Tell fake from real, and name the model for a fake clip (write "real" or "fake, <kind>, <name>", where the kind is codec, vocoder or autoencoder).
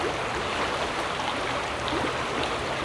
real